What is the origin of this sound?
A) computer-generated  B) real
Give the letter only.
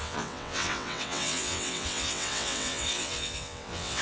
A